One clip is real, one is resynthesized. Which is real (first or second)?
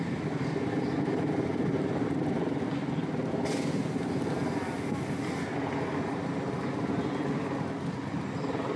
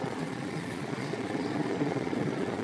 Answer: first